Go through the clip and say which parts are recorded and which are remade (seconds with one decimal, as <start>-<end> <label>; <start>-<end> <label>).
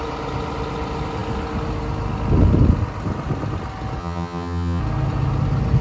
0.0-4.0 recorded; 4.0-4.8 remade; 4.8-5.8 recorded